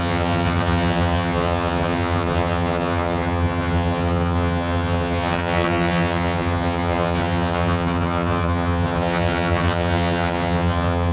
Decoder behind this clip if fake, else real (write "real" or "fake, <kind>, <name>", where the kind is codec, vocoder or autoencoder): fake, vocoder, HiFi-GAN